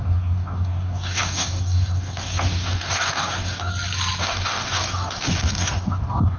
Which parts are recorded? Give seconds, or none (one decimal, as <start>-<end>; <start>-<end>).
3.7-4.2